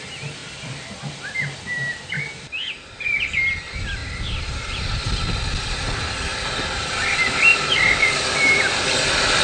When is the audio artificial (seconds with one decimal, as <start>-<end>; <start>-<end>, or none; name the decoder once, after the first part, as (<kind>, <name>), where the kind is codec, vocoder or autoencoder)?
4.0-5.3 (vocoder, BigVGAN v2); 6.3-6.9; 7.5-9.4